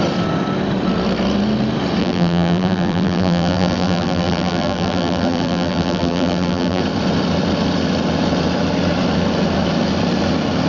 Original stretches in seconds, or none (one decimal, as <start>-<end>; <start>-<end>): 0.0-2.0; 6.8-10.7